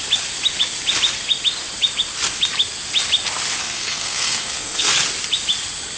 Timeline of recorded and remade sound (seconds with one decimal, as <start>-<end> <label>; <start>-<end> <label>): 0.0-3.6 recorded; 3.6-4.9 remade; 4.9-6.0 recorded